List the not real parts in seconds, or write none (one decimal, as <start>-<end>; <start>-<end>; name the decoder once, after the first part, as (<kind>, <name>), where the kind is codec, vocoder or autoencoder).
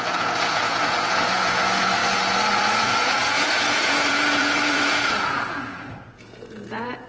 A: 0.0-2.0 (vocoder, Vocos); 2.8-7.1